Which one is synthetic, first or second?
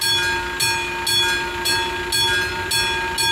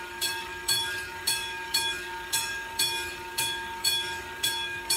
second